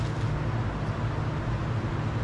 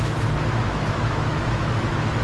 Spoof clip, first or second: second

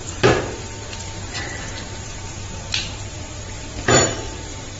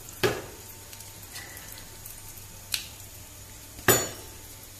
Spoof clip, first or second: first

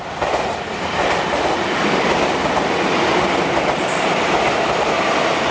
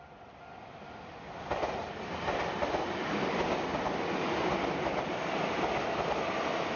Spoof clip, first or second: first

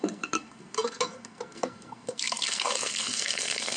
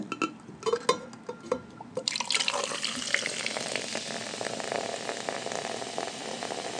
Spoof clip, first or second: first